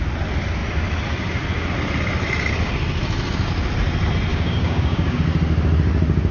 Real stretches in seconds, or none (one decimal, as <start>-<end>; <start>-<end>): 0.0-4.3; 5.2-6.3